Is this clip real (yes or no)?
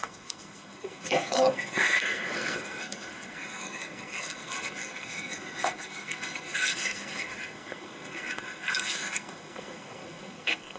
no